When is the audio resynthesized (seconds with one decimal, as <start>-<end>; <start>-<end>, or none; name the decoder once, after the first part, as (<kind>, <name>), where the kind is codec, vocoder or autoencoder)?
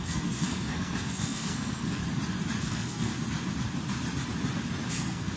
0.0-2.0 (codec, SNAC); 2.6-3.1; 4.9-5.4